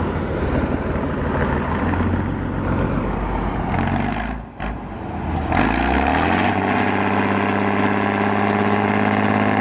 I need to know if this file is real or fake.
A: real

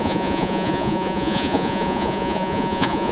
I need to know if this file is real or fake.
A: fake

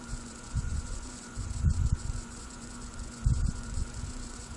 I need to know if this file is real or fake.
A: fake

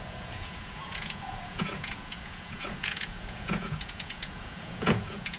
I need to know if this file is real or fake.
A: fake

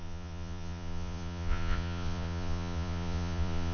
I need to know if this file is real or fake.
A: fake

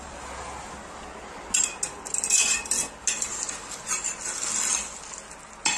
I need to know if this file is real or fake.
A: real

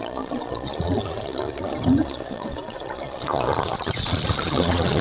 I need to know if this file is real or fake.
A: fake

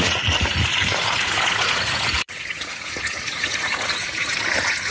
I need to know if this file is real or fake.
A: fake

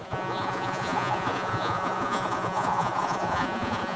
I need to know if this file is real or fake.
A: fake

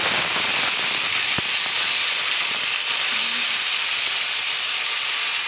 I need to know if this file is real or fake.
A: real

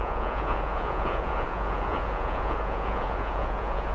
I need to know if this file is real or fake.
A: fake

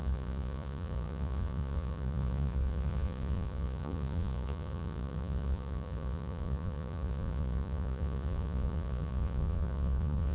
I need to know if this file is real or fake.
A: fake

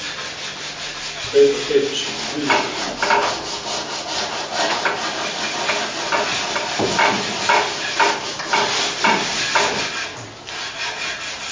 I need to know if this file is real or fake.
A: real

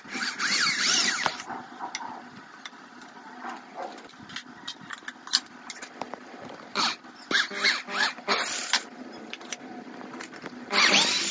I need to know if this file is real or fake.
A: real